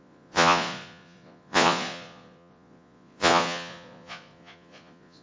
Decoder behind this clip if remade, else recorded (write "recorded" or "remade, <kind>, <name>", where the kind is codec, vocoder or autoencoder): remade, vocoder, Vocos